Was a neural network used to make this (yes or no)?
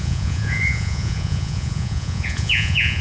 yes